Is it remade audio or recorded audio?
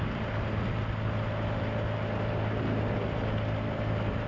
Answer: recorded